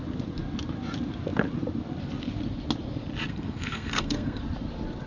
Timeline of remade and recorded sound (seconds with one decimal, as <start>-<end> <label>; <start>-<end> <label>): 0.0-3.3 recorded; 3.3-4.4 remade; 4.4-5.1 recorded